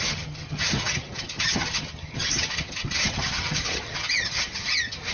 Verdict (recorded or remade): remade